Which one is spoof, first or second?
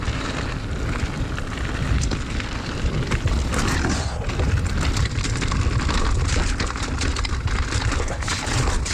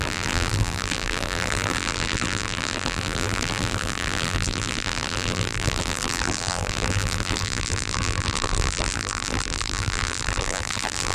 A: second